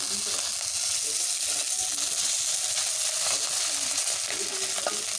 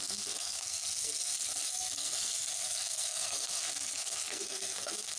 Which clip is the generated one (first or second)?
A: second